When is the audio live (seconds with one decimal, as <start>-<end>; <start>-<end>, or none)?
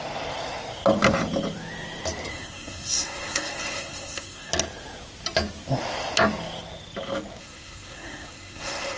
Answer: 0.0-2.3; 4.5-7.4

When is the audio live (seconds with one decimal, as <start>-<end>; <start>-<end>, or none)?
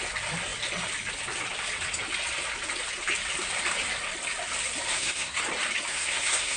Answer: 0.0-4.9; 5.4-5.9